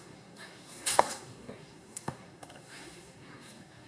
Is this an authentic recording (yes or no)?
no